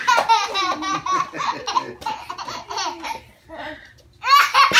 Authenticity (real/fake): real